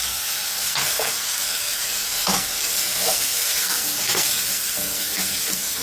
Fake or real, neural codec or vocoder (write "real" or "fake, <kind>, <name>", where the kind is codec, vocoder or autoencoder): fake, codec, SNAC